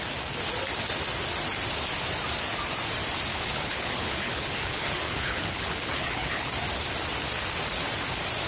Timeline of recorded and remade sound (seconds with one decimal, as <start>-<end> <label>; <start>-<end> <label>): 0.0-3.3 recorded; 3.3-6.5 remade; 6.5-8.5 recorded